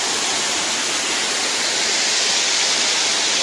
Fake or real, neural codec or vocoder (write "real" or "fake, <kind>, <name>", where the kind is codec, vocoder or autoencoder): real